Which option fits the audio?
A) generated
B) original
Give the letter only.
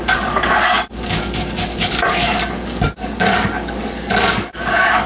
A